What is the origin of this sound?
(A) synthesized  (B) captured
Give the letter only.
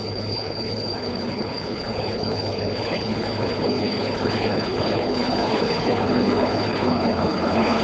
A